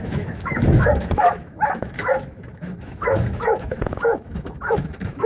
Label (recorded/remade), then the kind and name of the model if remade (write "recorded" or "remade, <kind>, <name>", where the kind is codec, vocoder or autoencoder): remade, autoencoder, DAC-VAE